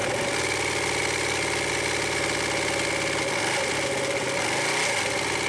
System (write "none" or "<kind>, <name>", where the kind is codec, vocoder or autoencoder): none